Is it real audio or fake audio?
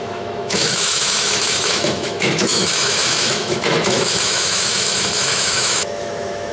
fake